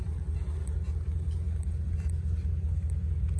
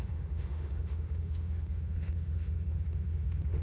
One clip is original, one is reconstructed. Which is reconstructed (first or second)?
second